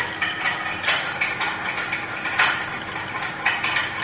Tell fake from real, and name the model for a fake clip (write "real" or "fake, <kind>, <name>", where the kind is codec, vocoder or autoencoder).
real